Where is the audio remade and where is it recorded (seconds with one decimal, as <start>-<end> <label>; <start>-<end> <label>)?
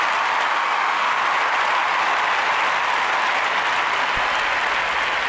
0.0-0.5 recorded; 0.5-1.2 remade; 1.2-5.3 recorded